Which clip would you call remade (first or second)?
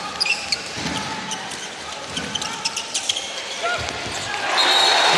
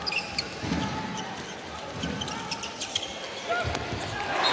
first